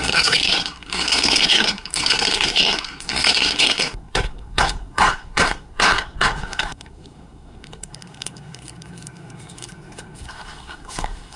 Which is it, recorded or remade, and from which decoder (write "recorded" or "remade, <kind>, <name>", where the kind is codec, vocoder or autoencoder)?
remade, codec, SNAC